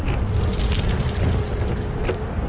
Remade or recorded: recorded